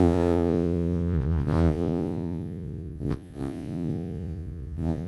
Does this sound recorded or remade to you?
remade